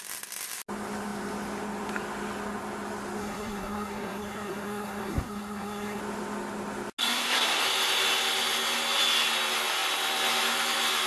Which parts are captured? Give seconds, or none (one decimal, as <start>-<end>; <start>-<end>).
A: 0.0-3.2; 6.0-7.0; 7.6-11.1

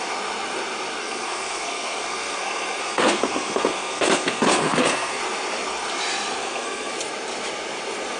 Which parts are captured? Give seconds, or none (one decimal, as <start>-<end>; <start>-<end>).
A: 0.0-1.0; 5.2-6.4; 6.9-8.2